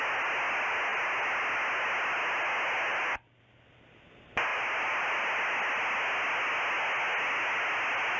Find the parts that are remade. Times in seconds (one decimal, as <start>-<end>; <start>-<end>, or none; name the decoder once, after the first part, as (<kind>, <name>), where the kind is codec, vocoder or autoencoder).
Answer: 2.9-3.4 (vocoder, BigVGAN v2); 4.5-5.4